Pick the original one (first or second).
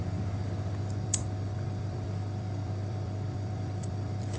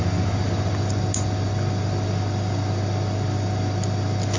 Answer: second